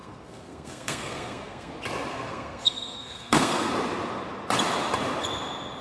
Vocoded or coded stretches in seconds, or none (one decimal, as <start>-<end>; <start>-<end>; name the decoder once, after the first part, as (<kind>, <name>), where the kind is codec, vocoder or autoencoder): 0.0-1.7 (codec, SNAC); 2.1-3.7